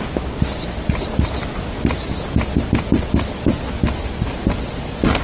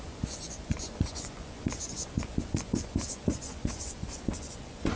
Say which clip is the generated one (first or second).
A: second